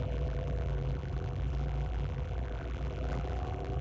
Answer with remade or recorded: remade